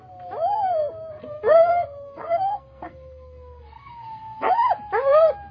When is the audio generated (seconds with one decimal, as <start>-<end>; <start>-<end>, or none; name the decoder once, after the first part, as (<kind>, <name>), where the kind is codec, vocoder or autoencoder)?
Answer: 1.2-4.5 (codec, SNAC)